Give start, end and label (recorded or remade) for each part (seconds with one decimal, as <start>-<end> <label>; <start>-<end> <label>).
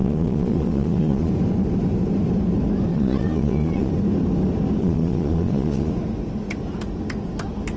0.0-1.3 remade; 1.3-2.9 recorded; 2.9-3.9 remade; 3.9-4.8 recorded; 4.8-5.9 remade; 5.9-7.8 recorded